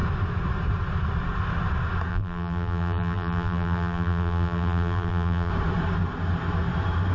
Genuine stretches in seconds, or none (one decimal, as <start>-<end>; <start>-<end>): 0.0-2.1; 5.5-7.1